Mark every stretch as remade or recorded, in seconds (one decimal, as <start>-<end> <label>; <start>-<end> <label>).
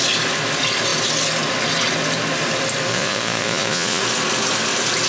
0.0-2.9 recorded; 2.9-4.0 remade; 4.0-5.1 recorded